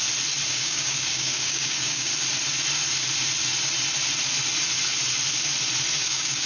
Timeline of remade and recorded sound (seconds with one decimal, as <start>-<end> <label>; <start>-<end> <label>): 0.0-0.5 recorded; 0.5-2.1 remade; 2.1-6.0 recorded; 6.0-6.5 remade